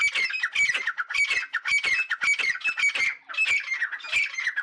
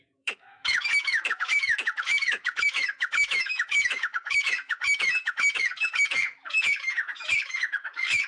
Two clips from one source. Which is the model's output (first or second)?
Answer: second